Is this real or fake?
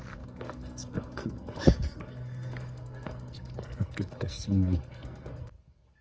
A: fake